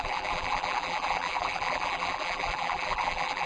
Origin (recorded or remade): remade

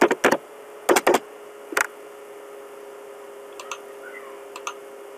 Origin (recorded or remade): recorded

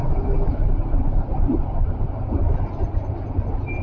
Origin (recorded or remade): recorded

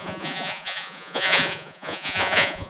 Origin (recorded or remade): remade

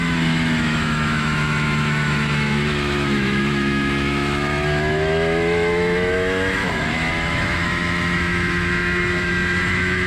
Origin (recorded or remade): remade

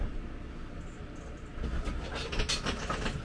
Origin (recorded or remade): recorded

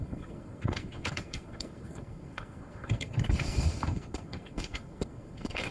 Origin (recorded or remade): remade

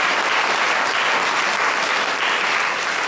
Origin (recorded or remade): recorded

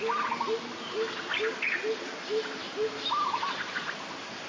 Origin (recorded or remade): recorded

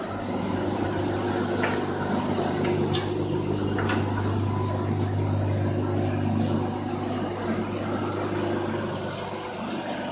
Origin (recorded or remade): recorded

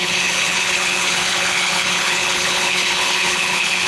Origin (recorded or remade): remade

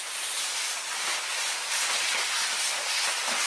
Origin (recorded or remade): recorded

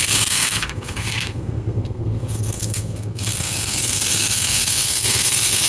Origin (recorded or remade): remade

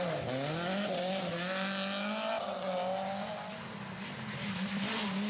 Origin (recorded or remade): recorded